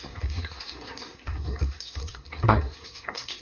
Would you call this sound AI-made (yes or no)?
yes